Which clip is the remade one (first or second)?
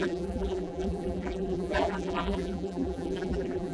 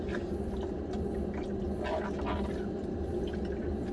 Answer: first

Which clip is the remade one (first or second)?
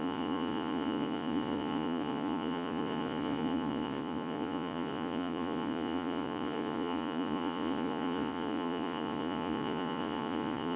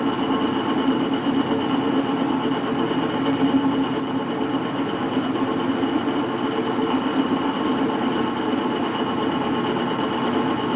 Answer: first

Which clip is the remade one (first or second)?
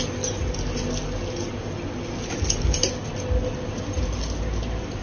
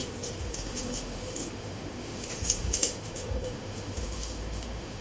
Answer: second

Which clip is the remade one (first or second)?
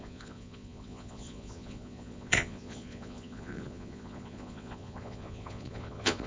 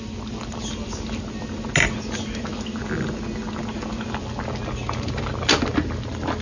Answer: first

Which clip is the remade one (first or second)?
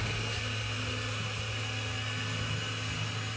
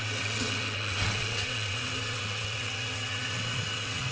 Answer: second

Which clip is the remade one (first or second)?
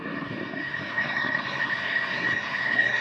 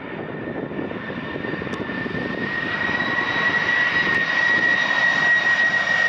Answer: first